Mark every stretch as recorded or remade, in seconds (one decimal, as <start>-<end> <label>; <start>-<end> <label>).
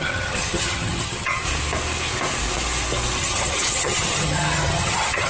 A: 0.0-1.4 remade; 1.4-3.2 recorded; 3.2-5.3 remade